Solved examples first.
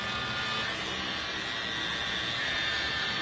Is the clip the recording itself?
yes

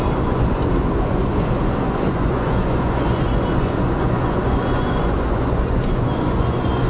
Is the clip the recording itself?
no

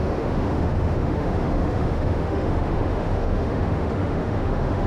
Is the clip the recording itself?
no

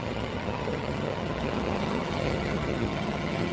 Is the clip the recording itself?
no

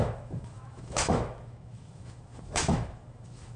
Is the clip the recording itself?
no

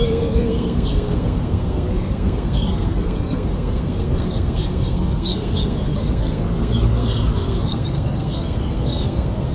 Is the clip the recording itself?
no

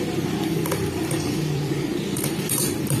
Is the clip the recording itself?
no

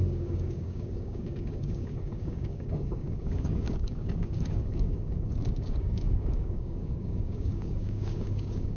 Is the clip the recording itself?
no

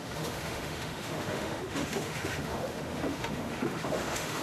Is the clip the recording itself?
no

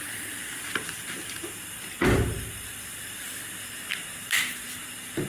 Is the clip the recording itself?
no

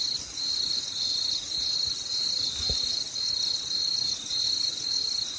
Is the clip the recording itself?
yes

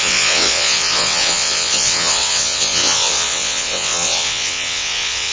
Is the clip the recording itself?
no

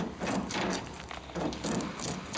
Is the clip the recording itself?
yes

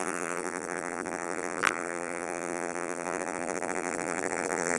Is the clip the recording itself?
no